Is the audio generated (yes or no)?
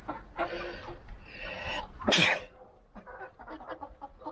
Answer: no